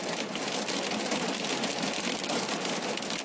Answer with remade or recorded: recorded